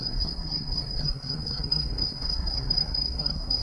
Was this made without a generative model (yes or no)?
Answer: no